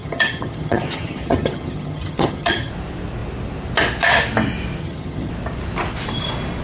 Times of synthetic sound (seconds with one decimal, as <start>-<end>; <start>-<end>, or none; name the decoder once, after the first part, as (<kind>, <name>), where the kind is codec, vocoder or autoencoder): 0.0-2.7 (vocoder, HiFi-GAN); 4.8-5.3